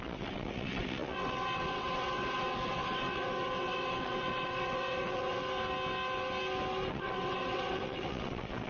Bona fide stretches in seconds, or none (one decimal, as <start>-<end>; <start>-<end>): 5.4-6.9